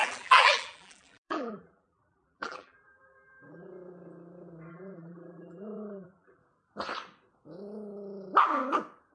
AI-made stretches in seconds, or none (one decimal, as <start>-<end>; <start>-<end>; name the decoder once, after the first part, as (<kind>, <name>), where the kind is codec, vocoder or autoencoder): 0.0-3.7 (vocoder, BigVGAN v2); 4.7-6.4